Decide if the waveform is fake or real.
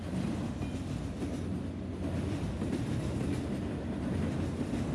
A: real